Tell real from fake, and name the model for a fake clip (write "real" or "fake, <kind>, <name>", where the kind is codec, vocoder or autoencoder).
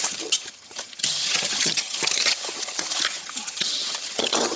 fake, vocoder, HiFi-GAN